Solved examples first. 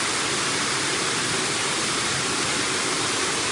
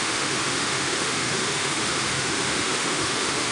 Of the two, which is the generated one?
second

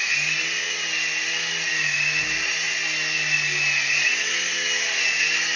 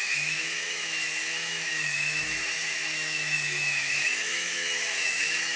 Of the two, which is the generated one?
second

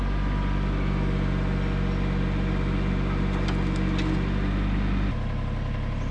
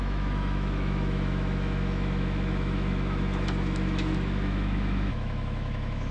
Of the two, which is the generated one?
second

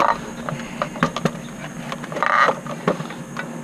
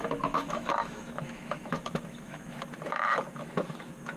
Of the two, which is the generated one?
second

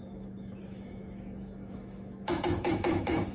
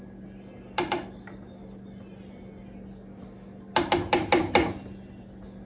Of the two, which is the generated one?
first